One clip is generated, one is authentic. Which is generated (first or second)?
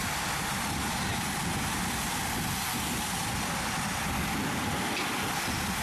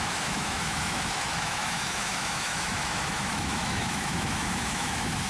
second